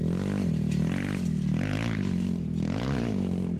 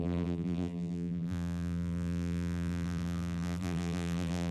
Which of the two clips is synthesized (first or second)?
second